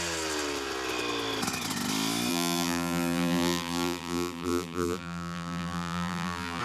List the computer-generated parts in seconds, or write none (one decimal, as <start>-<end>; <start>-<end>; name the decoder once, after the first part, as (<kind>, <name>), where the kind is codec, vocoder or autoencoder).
2.3-6.6 (vocoder, BigVGAN v2)